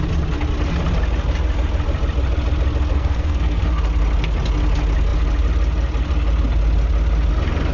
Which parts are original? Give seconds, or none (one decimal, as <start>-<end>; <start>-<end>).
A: 0.0-2.9; 3.7-7.7